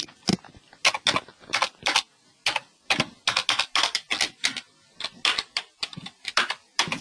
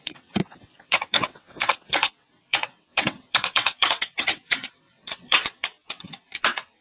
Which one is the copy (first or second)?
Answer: second